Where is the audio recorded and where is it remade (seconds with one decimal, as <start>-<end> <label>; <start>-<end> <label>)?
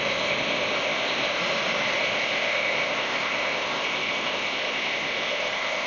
0.0-1.4 remade; 1.4-2.0 recorded; 2.0-5.9 remade